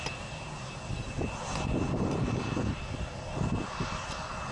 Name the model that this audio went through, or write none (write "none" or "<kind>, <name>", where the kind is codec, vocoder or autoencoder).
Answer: none